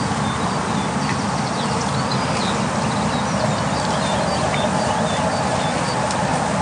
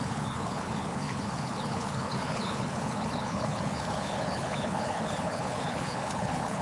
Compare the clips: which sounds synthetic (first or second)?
second